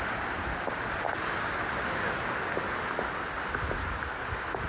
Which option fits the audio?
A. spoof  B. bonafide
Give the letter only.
B